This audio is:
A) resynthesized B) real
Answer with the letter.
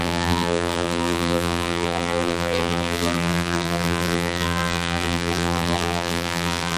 A